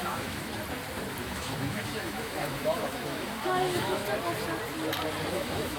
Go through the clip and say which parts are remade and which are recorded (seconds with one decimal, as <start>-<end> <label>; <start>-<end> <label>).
0.0-0.5 remade; 0.5-1.2 recorded; 1.2-4.0 remade; 4.0-5.3 recorded; 5.3-5.8 remade